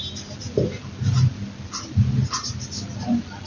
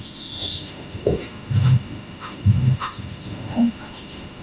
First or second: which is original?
first